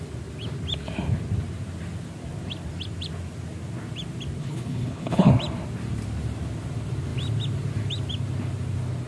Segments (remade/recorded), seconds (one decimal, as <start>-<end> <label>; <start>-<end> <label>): 0.0-4.4 recorded; 4.4-5.3 remade; 5.3-9.1 recorded